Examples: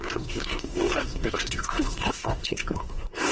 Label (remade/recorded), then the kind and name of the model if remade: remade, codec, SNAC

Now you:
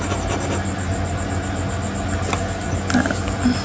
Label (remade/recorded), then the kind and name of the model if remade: recorded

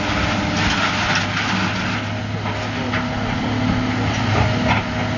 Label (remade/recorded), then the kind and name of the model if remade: recorded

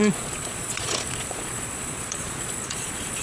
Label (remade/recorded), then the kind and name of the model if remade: remade, vocoder, Vocos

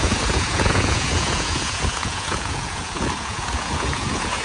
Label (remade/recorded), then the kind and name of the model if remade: remade, vocoder, Vocos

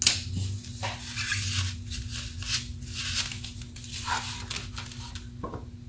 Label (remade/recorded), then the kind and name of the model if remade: recorded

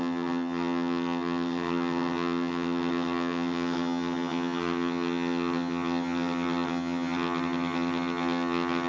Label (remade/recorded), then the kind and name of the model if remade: remade, vocoder, HiFi-GAN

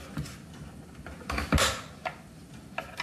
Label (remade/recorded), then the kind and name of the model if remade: recorded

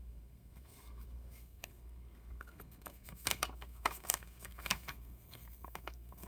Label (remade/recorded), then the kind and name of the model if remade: remade, codec, SNAC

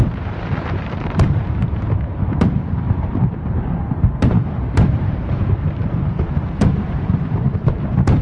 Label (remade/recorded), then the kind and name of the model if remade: remade, vocoder, BigVGAN v2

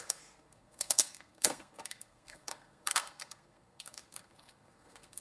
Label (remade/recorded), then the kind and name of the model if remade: remade, codec, SNAC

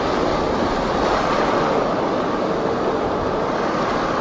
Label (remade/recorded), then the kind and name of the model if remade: recorded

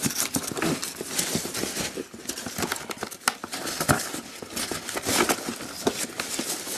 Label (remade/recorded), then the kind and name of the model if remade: recorded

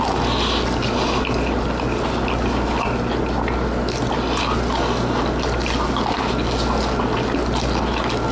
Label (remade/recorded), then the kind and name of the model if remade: recorded